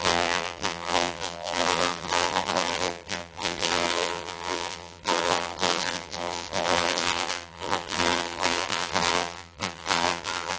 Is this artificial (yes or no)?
yes